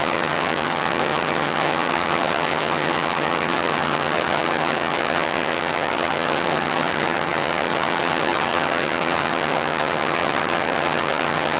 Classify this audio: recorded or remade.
remade